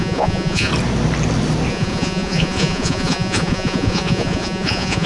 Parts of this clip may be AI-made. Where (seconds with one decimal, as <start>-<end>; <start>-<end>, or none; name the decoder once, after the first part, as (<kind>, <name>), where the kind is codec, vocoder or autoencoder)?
0.0-0.7 (vocoder, Vocos); 1.7-5.1